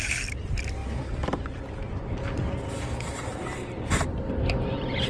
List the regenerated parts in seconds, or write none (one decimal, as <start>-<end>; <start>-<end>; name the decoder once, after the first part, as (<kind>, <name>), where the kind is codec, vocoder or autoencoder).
none